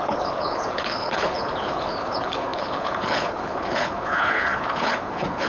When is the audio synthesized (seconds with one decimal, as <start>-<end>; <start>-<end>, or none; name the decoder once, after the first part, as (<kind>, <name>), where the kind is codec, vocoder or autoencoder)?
0.0-5.5 (codec, HILCodec)